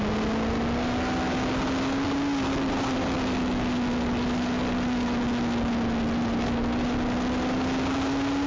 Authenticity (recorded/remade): recorded